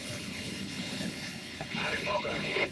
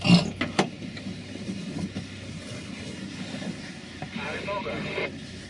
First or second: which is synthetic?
first